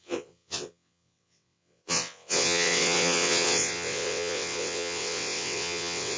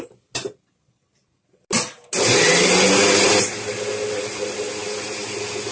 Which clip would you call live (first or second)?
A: second